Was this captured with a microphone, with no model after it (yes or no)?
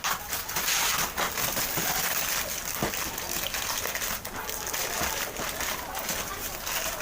yes